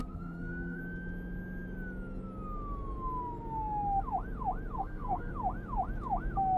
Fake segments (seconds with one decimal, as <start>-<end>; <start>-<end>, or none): 0.0-0.8; 4.8-5.3